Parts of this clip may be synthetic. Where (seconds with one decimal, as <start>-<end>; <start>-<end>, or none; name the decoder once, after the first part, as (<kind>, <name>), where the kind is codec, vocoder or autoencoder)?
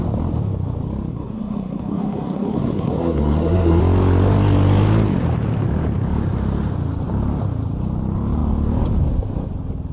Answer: 1.1-3.8 (codec, SNAC)